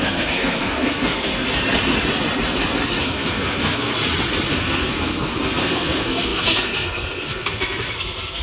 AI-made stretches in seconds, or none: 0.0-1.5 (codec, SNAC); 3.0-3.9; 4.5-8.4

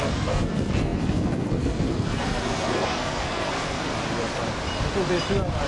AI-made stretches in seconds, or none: 0.0-3.9 (codec, SNAC)

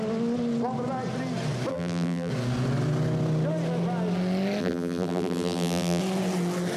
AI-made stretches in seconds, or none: 1.7-2.3 (vocoder, BigVGAN v2); 4.6-6.0

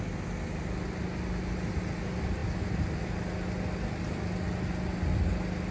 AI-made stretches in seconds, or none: none

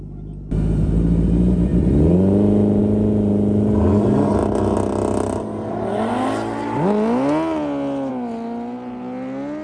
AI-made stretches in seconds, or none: none

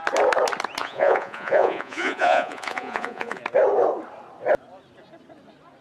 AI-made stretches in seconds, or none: 0.8-3.4 (vocoder, Vocos)

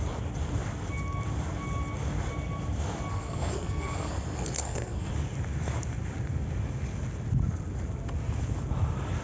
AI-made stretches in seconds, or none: 3.1-5.1 (codec, SNAC)